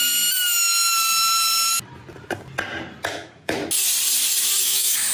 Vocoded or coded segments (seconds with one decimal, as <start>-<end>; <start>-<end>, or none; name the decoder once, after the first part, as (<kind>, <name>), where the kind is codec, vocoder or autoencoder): 3.1-3.6 (autoencoder, DAC-VAE); 4.6-5.1